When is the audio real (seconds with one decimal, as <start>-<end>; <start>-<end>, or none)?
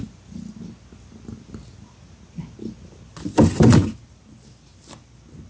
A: 0.0-5.5